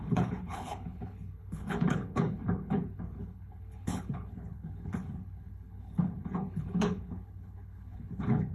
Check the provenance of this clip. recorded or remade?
remade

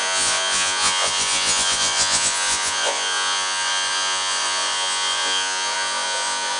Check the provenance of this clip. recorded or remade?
remade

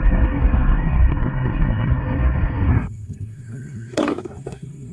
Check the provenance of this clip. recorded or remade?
remade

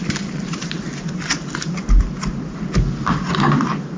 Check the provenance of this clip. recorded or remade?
recorded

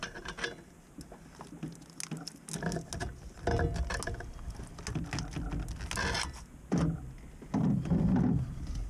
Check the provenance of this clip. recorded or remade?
recorded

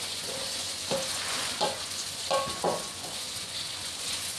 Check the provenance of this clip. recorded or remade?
remade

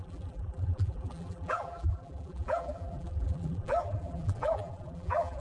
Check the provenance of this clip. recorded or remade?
remade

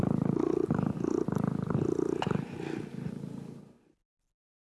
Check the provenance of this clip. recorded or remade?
recorded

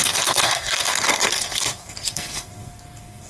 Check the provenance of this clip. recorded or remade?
remade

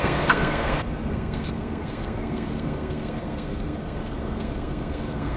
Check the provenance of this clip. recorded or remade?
remade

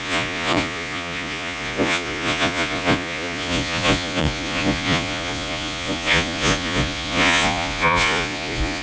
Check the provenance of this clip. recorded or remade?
remade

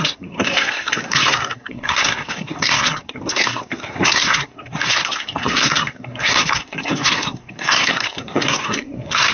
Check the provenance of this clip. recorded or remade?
remade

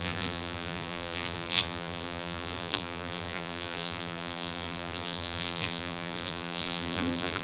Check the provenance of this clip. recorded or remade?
remade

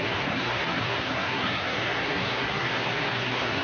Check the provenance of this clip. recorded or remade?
remade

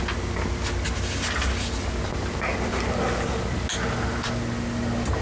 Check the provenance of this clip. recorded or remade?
recorded